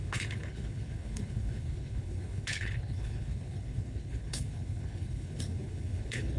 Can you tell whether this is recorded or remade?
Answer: remade